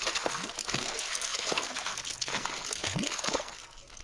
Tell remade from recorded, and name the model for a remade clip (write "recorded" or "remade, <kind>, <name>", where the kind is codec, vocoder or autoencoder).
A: remade, codec, SNAC